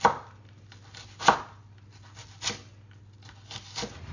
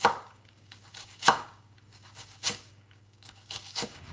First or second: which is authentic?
first